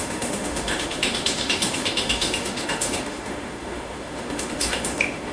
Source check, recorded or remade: remade